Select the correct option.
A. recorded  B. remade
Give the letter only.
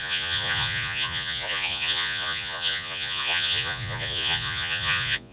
B